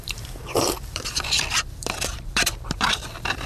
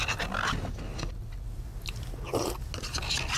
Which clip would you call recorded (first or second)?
second